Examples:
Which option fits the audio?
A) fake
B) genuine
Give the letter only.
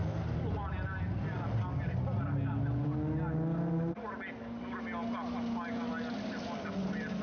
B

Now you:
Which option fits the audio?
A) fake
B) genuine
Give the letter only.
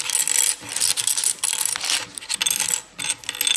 B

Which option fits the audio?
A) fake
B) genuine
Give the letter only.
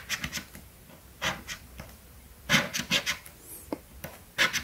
B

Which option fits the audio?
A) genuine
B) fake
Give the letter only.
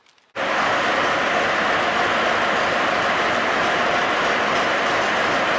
A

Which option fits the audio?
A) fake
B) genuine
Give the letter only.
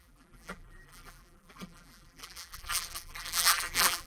A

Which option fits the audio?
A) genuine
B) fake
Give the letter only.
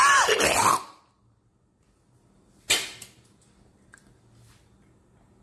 A